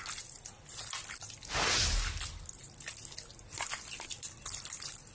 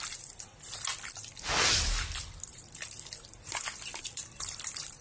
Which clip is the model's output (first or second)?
second